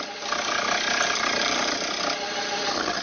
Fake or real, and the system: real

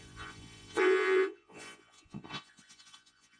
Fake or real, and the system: fake, vocoder, Vocos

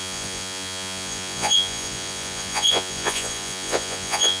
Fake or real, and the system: fake, vocoder, Vocos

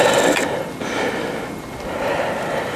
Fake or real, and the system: real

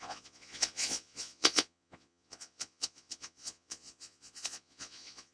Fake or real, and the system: fake, vocoder, Vocos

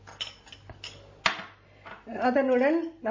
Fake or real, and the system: real